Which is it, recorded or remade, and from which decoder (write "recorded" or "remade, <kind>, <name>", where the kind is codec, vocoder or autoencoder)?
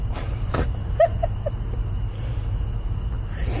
recorded